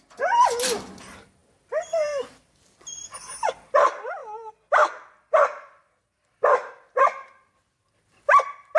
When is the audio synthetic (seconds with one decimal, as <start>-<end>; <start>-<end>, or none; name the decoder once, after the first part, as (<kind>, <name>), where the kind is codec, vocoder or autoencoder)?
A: none